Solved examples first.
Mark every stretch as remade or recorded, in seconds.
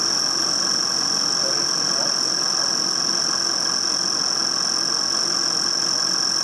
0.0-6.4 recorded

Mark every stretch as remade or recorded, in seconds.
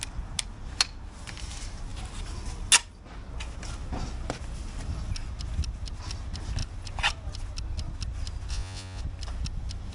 0.0-8.5 recorded; 8.5-9.0 remade; 9.0-9.9 recorded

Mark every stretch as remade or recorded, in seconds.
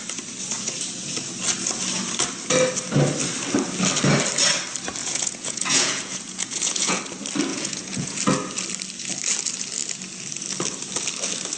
0.0-5.0 recorded; 5.0-7.0 remade; 7.0-7.5 recorded; 7.5-8.2 remade; 8.2-11.6 recorded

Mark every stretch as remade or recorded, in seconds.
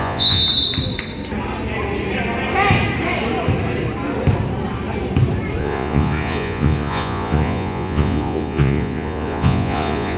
0.0-0.4 remade; 0.4-5.6 recorded; 5.6-10.2 remade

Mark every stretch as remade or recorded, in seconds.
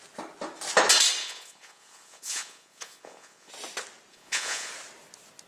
0.0-1.2 recorded; 1.2-3.5 remade; 3.5-4.1 recorded; 4.1-4.7 remade; 4.7-5.5 recorded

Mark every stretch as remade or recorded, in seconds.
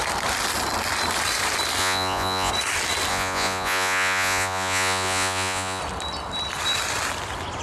0.0-1.8 recorded; 1.8-2.5 remade; 2.5-3.1 recorded; 3.1-5.8 remade; 5.8-7.6 recorded